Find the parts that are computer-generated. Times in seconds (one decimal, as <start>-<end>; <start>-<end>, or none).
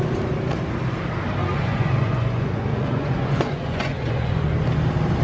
1.4-4.5